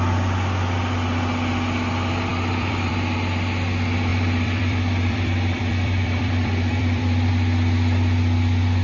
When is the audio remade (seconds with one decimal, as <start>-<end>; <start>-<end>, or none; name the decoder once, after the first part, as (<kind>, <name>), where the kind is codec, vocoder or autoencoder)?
2.3-2.9 (vocoder, BigVGAN v2); 4.1-7.3